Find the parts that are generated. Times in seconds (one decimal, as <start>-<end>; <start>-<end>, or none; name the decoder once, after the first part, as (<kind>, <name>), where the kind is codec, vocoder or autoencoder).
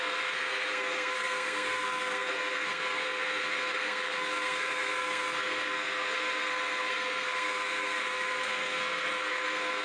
0.0-9.8 (codec, SNAC)